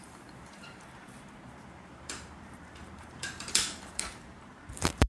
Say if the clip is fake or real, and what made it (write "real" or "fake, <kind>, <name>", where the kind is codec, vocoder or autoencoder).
fake, vocoder, BigVGAN v2